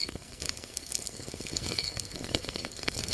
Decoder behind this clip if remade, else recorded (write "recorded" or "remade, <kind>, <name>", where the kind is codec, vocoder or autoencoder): remade, codec, SNAC